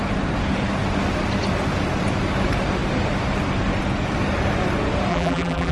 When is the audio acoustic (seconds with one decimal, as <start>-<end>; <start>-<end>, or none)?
0.0-5.1

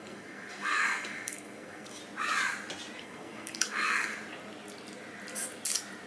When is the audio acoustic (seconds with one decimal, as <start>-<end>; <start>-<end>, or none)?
2.0-3.0; 4.1-6.1

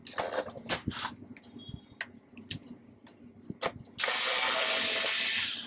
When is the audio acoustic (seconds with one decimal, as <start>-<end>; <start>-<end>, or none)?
0.0-5.7

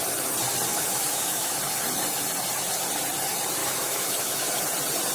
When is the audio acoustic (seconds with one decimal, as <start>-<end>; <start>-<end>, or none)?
0.0-0.7; 1.6-3.6; 4.5-5.1

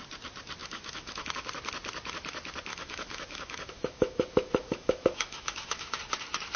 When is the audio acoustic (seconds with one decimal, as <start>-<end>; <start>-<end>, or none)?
0.0-0.6; 1.4-2.7; 6.0-6.6

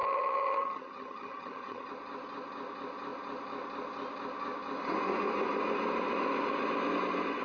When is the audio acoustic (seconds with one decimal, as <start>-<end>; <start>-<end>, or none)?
1.9-7.4

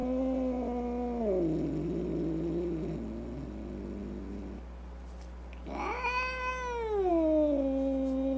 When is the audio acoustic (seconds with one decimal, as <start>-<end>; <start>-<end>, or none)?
0.0-8.4

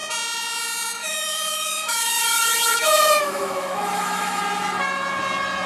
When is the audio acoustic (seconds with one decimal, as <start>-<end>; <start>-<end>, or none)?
0.0-1.0; 4.4-5.7